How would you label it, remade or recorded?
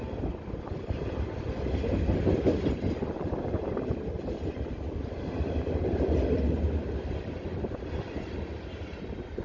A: recorded